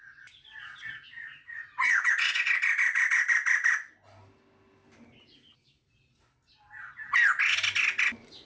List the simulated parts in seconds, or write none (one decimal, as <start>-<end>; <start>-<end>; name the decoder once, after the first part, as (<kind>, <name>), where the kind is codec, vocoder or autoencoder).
1.4-3.3 (vocoder, Vocos)